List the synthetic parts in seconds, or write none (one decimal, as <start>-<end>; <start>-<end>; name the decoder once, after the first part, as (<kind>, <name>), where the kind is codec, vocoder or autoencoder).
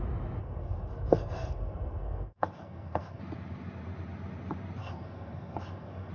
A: 0.4-3.2 (codec, SNAC); 4.8-6.1